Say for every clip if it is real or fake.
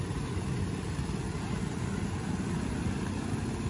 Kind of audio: real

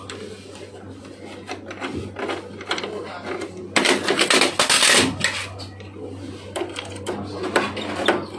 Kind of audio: real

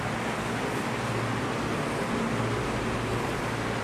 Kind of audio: real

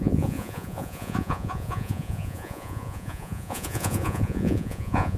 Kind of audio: fake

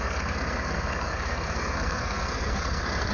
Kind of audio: fake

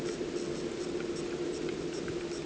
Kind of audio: real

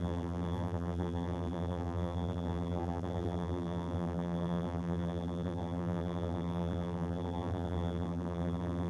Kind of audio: fake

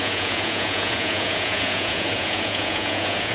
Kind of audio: fake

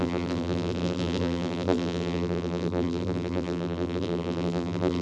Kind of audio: fake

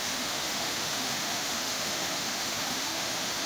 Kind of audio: fake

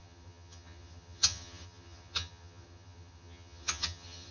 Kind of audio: fake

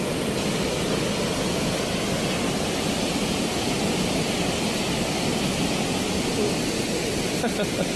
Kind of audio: real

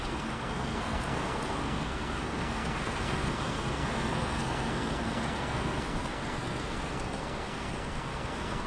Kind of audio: fake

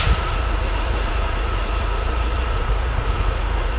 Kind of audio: fake